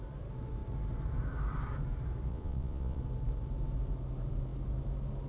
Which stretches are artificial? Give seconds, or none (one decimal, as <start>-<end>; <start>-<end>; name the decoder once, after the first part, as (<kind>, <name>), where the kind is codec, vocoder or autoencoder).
2.3-3.0 (vocoder, Vocos)